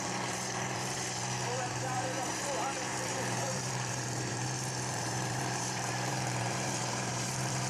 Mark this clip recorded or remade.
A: remade